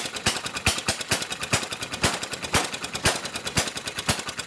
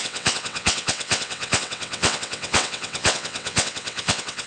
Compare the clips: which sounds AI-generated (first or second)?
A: second